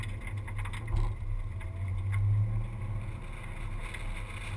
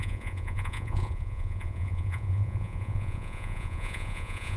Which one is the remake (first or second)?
second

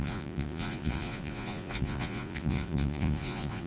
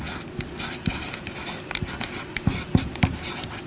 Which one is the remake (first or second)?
first